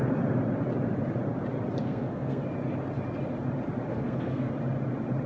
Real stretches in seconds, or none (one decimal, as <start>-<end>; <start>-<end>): 0.0-1.8; 2.4-3.9; 4.5-5.3